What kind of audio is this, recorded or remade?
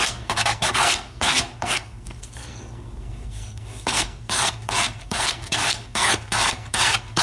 remade